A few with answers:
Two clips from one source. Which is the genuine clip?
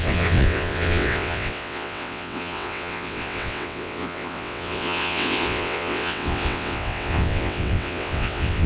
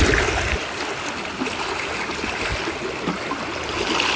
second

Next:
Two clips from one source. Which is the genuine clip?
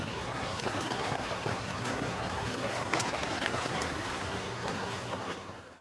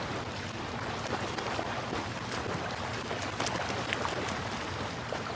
second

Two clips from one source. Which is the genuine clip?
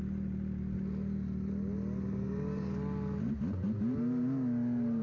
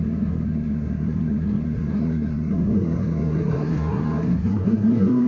first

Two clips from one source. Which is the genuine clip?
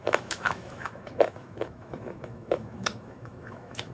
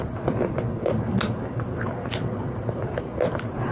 second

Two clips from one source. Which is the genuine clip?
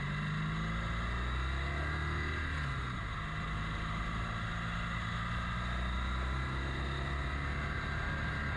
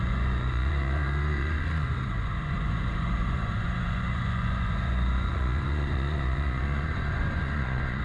first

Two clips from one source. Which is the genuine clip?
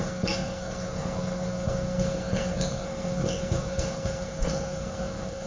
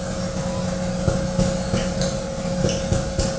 second